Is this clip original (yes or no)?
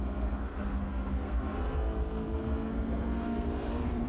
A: no